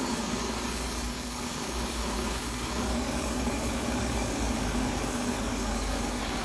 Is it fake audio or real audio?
fake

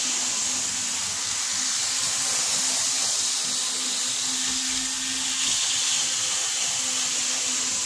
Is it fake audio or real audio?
real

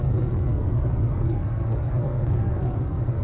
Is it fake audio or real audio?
fake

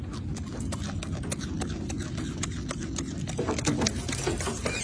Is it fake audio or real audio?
real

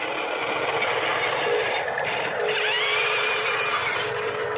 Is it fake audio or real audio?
real